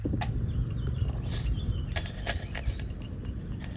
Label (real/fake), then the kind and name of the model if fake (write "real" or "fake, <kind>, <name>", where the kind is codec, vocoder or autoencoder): fake, vocoder, BigVGAN v2